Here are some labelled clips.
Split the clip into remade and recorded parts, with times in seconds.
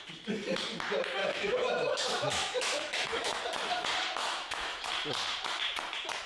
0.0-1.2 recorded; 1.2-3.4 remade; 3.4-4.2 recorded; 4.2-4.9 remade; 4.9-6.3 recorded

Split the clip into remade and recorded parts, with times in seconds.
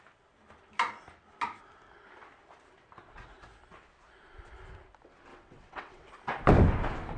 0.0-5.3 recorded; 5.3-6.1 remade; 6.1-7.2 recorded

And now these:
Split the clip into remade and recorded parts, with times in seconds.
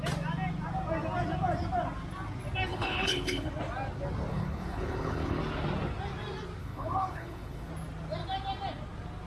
0.0-2.7 recorded; 2.7-3.5 remade; 3.5-4.3 recorded; 4.3-5.4 remade; 5.4-6.6 recorded; 6.6-7.7 remade; 7.7-9.3 recorded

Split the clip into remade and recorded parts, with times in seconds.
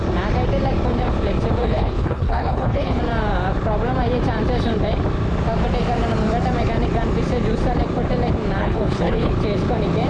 0.0-1.6 recorded; 1.6-3.0 remade; 3.0-8.6 recorded; 8.6-9.3 remade; 9.3-10.1 recorded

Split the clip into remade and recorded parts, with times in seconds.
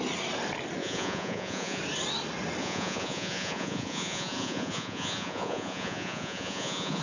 0.0-0.8 recorded; 0.8-1.8 remade; 1.8-2.6 recorded; 2.6-7.0 remade